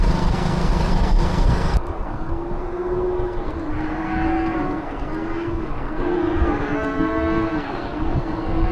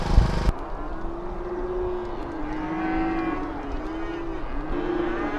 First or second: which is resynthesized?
first